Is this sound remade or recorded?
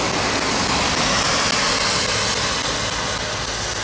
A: recorded